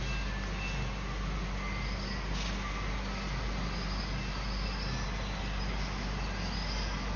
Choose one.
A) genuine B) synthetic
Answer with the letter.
A